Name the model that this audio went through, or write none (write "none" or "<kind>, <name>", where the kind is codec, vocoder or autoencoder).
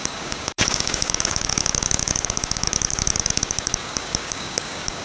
codec, DAC